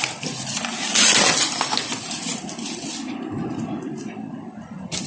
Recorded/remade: remade